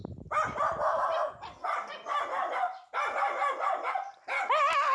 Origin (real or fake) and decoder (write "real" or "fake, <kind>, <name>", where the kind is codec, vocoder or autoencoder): real